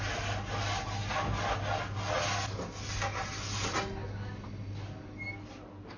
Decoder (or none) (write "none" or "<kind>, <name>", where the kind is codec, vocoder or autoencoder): none